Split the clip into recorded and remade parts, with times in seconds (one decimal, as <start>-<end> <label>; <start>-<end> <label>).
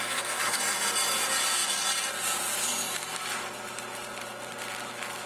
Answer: 0.0-0.6 remade; 0.6-5.3 recorded